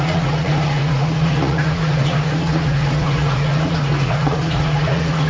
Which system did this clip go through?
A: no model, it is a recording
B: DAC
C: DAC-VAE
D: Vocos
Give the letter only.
D